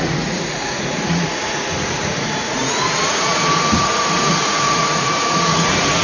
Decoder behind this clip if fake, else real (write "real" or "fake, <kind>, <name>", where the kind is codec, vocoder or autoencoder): fake, vocoder, Vocos